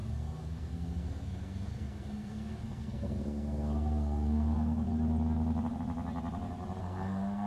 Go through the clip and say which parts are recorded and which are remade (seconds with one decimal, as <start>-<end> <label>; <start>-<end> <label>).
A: 0.0-4.9 remade; 4.9-6.8 recorded; 6.8-7.5 remade